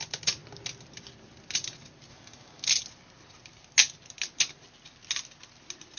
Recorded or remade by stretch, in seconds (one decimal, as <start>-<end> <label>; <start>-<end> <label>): 0.0-2.1 recorded; 2.1-2.7 remade; 2.7-6.0 recorded